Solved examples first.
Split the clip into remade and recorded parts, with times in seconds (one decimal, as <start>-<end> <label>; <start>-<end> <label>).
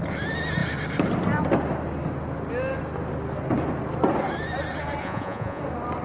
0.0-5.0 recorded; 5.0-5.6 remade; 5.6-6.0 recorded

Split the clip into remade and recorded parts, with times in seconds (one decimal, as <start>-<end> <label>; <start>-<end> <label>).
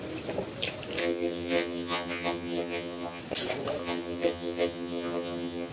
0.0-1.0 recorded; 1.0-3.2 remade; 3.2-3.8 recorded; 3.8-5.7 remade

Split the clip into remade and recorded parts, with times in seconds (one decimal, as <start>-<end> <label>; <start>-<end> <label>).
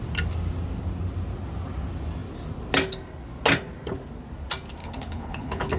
0.0-4.8 recorded; 4.8-5.8 remade